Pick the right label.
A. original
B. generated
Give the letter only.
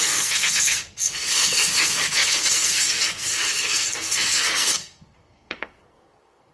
B